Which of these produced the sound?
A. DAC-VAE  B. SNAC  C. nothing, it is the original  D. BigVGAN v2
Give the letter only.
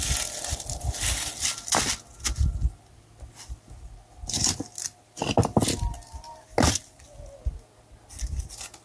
C